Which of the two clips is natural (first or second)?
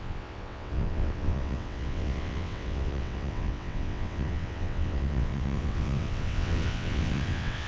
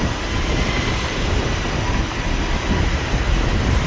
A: second